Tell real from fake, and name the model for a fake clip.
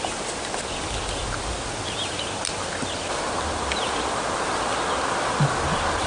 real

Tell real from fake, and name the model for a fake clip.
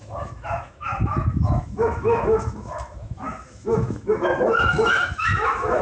fake, autoencoder, DAC-VAE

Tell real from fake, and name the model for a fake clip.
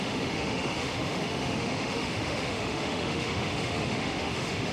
fake, autoencoder, DAC-VAE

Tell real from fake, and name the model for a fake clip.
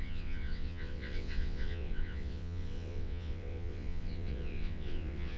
fake, vocoder, WaveNeXt